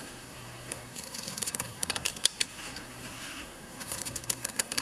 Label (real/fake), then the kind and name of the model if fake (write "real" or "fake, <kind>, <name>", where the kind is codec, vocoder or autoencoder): fake, codec, SNAC